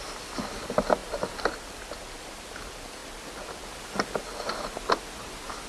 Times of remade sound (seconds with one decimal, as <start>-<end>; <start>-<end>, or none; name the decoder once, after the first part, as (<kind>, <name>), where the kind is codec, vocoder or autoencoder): none

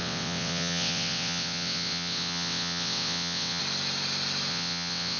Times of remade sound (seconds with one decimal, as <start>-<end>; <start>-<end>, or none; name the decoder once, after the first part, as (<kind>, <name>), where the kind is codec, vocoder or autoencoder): 0.0-3.6 (vocoder, WaveNeXt); 4.5-5.2

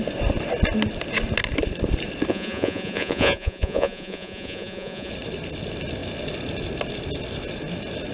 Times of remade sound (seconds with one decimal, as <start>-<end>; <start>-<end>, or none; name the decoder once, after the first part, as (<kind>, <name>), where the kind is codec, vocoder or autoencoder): 2.3-5.1 (vocoder, Vocos)

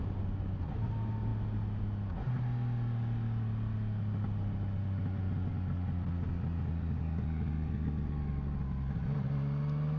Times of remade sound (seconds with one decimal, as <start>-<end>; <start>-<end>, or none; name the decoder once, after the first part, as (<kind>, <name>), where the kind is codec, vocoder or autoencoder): none

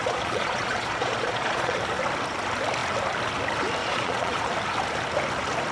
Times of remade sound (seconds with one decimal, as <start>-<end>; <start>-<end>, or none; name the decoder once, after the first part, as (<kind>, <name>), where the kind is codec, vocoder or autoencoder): 0.0-1.8 (vocoder, Vocos); 3.8-4.4